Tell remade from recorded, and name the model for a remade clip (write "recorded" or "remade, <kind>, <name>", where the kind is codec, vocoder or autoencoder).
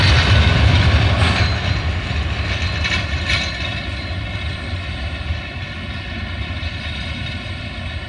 recorded